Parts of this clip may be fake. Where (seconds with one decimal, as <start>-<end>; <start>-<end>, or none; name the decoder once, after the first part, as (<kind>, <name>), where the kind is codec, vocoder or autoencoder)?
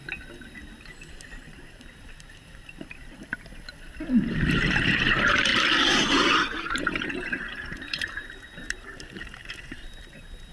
0.6-3.3 (vocoder, BigVGAN v2); 4.0-5.5; 6.3-10.5